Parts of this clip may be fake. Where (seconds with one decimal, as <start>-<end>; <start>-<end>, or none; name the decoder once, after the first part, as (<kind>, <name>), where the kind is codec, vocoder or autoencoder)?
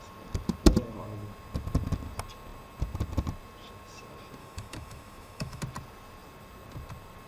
4.4-5.6 (autoencoder, DAC-VAE)